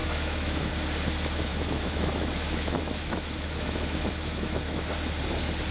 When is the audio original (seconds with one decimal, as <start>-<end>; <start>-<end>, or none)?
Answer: 0.7-1.5; 4.9-5.7